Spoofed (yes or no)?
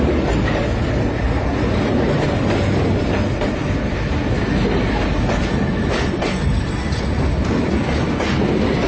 no